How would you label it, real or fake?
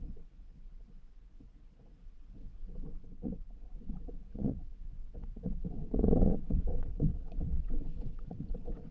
fake